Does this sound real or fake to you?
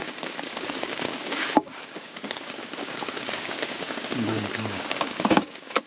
fake